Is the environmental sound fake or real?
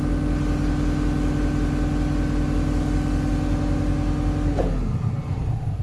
real